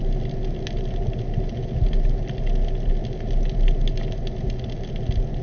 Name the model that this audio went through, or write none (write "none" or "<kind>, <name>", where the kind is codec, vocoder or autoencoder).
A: none